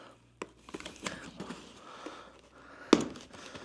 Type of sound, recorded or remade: recorded